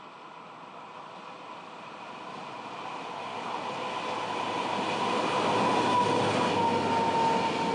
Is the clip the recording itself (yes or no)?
yes